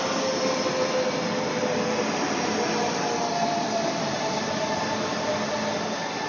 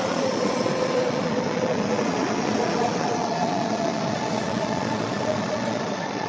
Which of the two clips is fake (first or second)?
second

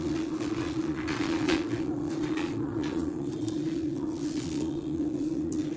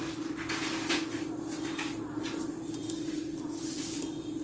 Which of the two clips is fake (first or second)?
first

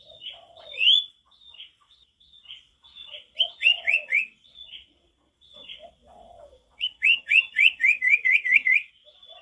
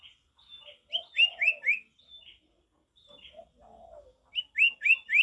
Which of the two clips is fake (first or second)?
first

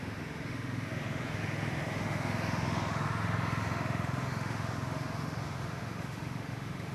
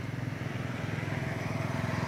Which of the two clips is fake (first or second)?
first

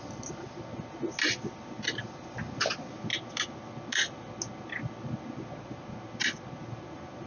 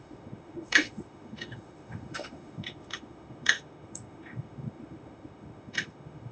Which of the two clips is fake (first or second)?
second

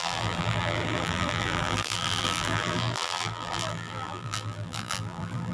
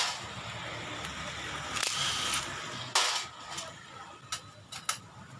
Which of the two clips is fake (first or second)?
first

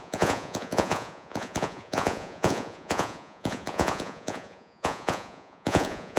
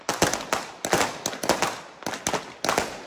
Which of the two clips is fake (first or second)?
first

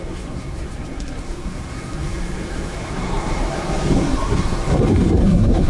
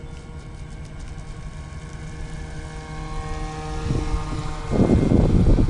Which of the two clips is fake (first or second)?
first